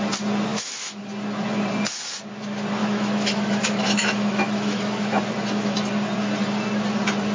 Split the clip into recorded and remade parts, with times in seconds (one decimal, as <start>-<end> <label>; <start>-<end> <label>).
0.0-0.5 recorded; 0.5-1.0 remade; 1.0-2.8 recorded; 2.8-5.2 remade; 5.2-7.3 recorded